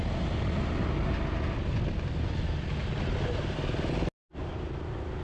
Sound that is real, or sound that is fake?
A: real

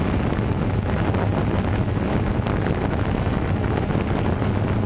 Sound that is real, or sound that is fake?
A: real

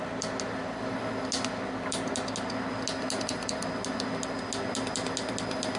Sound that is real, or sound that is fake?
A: real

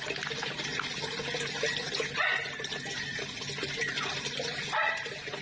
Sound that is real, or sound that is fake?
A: real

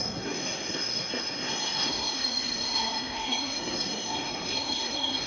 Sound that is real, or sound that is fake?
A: fake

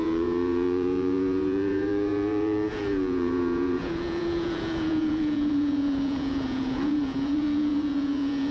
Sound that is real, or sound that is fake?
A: fake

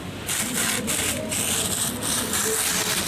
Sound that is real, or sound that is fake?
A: real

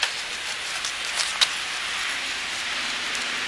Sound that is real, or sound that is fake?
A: real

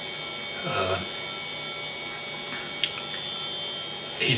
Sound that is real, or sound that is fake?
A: real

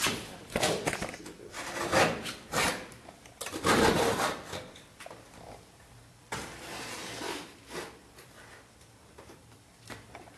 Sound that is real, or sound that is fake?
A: fake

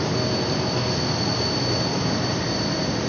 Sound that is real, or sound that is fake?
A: real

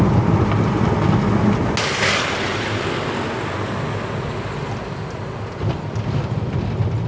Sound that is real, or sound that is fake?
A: real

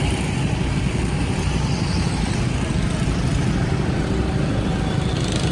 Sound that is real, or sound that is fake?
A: real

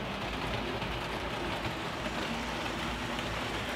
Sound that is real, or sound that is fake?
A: real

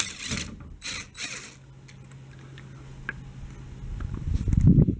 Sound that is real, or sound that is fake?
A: real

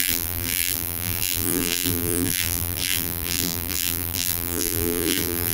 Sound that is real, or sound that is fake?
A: fake